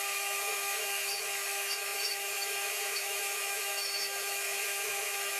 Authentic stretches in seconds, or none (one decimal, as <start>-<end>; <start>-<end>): none